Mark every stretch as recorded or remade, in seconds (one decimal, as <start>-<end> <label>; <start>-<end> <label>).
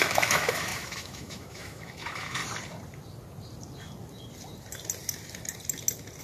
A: 0.0-2.4 remade; 2.4-6.2 recorded